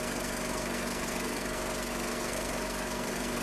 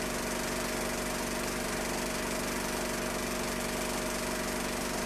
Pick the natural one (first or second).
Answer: second